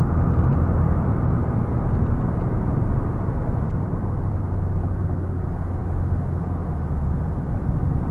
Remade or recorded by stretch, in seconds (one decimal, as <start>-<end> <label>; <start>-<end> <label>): 0.0-0.5 recorded; 0.5-5.1 remade; 5.1-8.1 recorded